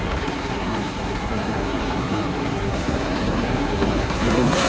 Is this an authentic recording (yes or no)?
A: no